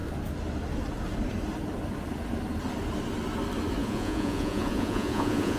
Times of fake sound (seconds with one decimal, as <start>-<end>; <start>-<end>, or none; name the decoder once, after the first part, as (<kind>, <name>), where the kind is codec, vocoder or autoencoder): 3.8-5.6 (vocoder, Vocos)